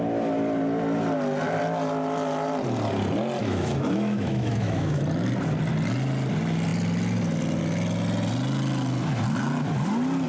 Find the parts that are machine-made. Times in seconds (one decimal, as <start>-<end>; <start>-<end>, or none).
3.4-5.0

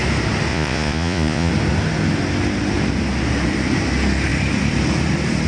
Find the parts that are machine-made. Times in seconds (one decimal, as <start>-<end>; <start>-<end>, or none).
0.5-1.5

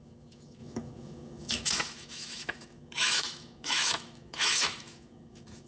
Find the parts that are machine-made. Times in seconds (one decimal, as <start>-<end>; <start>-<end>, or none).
0.0-5.7

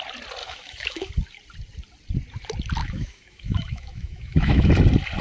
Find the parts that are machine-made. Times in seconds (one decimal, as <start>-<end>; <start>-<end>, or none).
0.4-1.1; 2.8-4.7

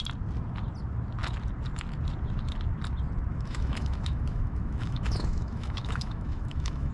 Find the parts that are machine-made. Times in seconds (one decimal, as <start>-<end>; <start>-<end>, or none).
3.3-6.9

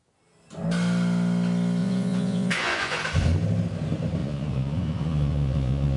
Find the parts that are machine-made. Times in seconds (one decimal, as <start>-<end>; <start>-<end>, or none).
1.8-3.0; 4.2-6.0

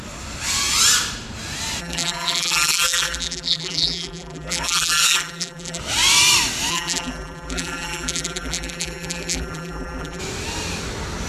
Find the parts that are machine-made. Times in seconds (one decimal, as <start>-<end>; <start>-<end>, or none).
1.8-5.8; 6.7-10.2